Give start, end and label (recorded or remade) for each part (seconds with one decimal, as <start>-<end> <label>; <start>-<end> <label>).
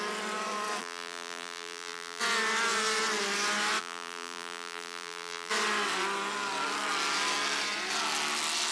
0.0-0.8 recorded; 0.8-2.2 remade; 2.2-3.8 recorded; 3.8-5.5 remade; 5.5-8.7 recorded